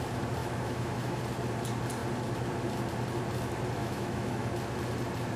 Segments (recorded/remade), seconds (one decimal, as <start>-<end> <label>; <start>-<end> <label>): 0.0-0.4 recorded; 0.4-1.2 remade; 1.2-3.8 recorded; 3.8-4.5 remade; 4.5-5.4 recorded

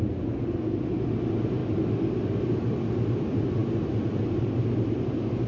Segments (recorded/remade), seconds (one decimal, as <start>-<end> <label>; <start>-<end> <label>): 0.0-5.5 recorded

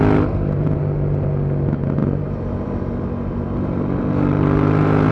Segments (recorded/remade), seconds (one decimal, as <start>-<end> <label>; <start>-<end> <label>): 0.0-2.0 recorded; 2.0-5.1 remade

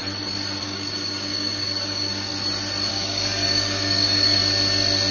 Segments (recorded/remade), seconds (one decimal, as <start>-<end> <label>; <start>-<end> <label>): 0.0-0.6 recorded; 0.6-2.3 remade; 2.3-2.9 recorded; 2.9-4.4 remade; 4.4-5.1 recorded

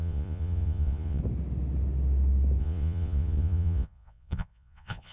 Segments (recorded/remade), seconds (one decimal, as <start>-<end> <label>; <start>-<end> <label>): 0.0-1.2 remade; 1.2-2.6 recorded; 2.6-5.1 remade